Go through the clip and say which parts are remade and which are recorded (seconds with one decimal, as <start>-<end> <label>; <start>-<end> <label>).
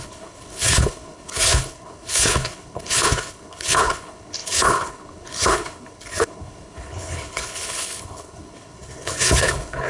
0.0-9.9 remade